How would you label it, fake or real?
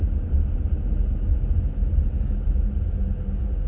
real